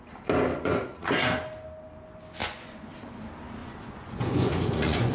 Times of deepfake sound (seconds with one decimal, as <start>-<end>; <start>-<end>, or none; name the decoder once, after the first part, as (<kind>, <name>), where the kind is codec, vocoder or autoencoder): 0.5-1.1 (vocoder, Vocos); 2.4-2.9; 3.6-5.1